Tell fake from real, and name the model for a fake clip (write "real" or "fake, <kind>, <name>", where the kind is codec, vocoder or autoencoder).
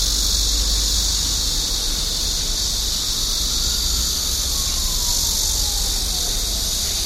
real